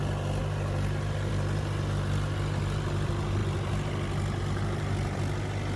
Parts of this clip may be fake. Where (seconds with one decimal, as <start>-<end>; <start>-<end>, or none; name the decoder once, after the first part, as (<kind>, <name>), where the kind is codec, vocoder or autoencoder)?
none